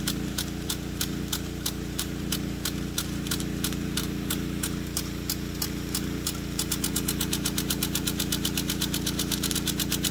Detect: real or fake fake